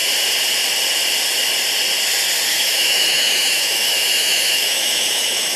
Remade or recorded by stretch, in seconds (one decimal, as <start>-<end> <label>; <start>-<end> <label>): 0.0-2.5 recorded; 2.5-5.6 remade